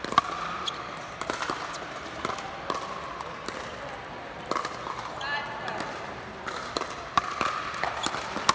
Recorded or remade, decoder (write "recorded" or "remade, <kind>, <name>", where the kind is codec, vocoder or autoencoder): recorded